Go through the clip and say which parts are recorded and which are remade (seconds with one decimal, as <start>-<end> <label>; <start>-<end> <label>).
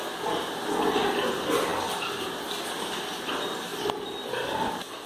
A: 0.0-3.7 recorded; 3.7-5.1 remade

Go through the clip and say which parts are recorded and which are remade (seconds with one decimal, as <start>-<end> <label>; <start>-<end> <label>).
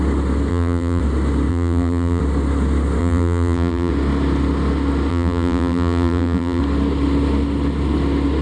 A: 0.0-0.5 recorded; 0.5-1.0 remade; 1.0-1.5 recorded; 1.5-2.2 remade; 2.2-3.0 recorded; 3.0-3.9 remade; 3.9-5.1 recorded; 5.1-6.6 remade; 6.6-8.4 recorded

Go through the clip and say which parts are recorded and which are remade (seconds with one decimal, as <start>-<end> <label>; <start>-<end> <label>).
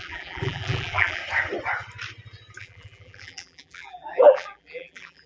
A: 0.0-1.2 remade; 1.2-2.6 recorded; 2.6-5.3 remade